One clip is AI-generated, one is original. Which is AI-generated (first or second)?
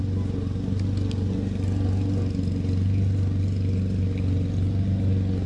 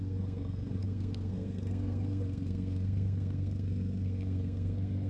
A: second